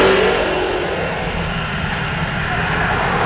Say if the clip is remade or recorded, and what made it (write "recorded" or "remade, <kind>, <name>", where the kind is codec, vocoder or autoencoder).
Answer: recorded